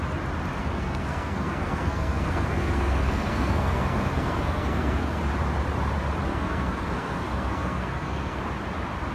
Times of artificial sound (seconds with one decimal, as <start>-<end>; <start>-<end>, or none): 0.6-5.2; 6.3-8.4